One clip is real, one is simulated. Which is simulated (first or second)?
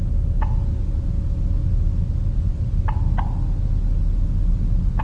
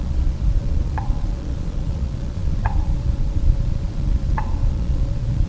second